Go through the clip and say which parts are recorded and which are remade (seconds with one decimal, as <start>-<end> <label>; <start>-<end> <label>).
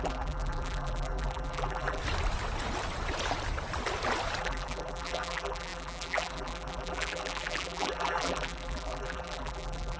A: 0.0-2.0 remade; 2.0-4.4 recorded; 4.4-10.0 remade